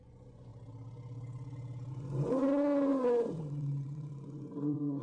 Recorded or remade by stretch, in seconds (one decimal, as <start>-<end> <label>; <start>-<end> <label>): 0.0-0.5 remade; 0.5-1.9 recorded; 1.9-5.0 remade